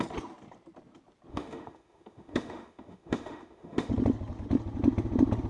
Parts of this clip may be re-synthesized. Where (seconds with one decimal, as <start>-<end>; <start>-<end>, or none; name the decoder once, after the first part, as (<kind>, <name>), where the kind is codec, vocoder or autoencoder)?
1.3-3.9 (autoencoder, DAC-VAE)